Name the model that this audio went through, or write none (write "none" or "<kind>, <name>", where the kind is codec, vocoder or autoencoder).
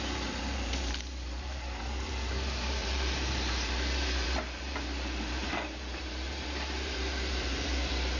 vocoder, BigVGAN v2